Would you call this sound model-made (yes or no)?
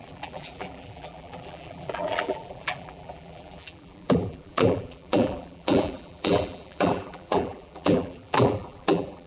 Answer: yes